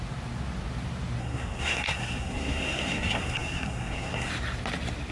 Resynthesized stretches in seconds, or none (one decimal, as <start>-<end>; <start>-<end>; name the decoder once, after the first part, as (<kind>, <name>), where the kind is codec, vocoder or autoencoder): 1.2-4.3 (codec, SNAC)